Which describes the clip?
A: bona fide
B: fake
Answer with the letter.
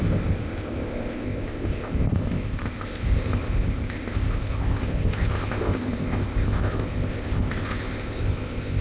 B